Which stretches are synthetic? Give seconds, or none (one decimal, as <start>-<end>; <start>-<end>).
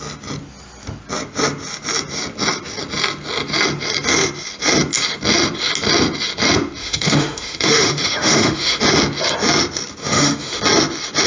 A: 6.8-8.8; 10.0-10.6